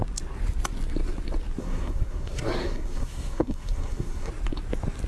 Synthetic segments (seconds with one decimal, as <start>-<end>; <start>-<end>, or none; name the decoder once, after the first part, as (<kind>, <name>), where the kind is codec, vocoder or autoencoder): 1.6-4.3 (codec, SNAC)